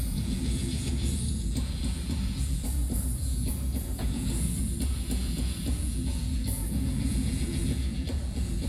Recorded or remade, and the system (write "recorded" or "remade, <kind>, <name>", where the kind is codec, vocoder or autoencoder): remade, vocoder, Vocos